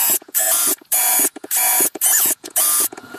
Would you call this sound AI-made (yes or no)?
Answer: yes